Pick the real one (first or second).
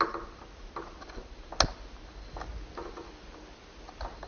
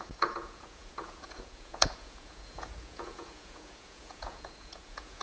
first